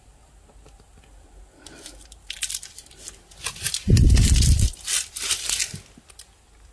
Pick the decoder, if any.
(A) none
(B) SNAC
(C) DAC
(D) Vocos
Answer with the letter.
A